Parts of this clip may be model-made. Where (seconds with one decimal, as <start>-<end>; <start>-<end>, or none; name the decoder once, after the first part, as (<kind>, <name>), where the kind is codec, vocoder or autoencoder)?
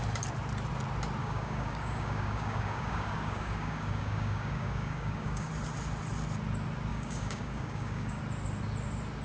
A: 1.2-5.5 (codec, DAC); 6.9-8.2